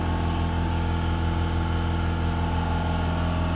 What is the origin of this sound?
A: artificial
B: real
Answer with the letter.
B